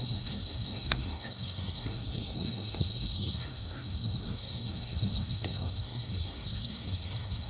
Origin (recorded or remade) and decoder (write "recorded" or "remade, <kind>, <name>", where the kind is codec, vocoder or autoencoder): remade, codec, SNAC